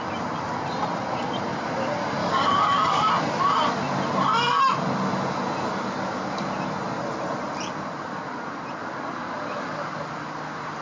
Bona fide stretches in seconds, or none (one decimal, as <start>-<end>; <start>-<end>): 0.0-2.2; 3.1-10.8